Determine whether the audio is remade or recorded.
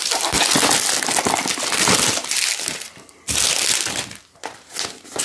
recorded